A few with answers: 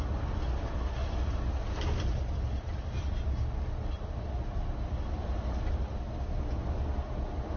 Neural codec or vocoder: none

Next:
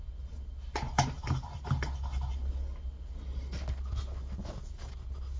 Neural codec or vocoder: none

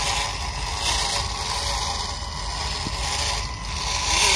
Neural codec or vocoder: none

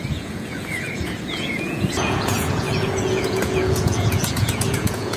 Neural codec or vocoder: vocoder, Vocos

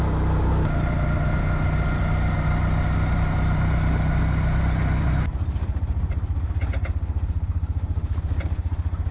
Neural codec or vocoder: none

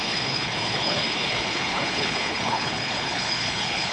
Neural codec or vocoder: codec, HILCodec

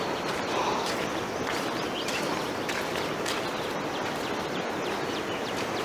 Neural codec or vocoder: none